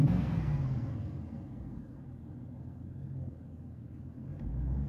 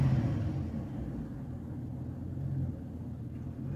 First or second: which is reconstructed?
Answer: first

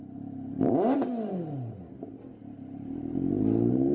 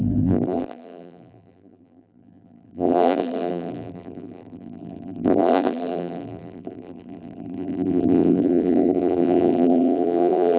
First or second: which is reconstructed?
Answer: second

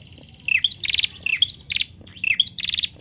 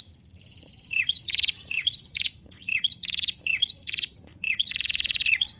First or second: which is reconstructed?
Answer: second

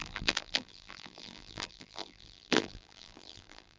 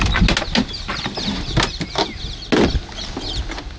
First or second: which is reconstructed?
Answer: first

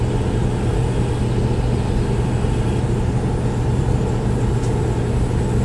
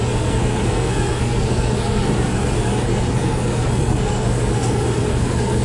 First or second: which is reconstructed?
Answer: second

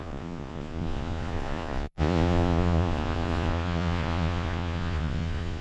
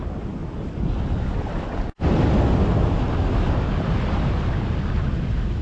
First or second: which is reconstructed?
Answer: first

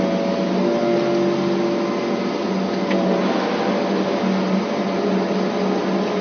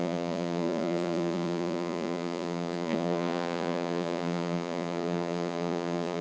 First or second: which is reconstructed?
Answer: second